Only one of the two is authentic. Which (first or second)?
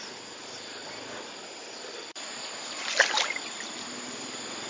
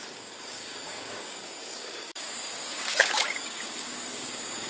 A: first